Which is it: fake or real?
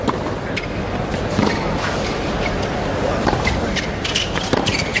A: real